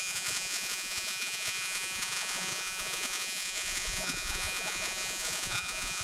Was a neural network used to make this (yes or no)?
yes